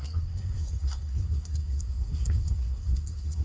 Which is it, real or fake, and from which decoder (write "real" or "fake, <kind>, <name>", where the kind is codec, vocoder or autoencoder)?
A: fake, codec, SNAC